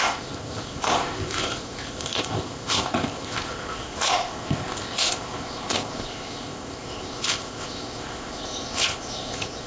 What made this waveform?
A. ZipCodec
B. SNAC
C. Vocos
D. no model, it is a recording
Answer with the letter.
A